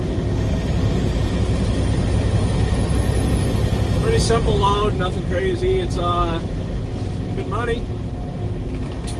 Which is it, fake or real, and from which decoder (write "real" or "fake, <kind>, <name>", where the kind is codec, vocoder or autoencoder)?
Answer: real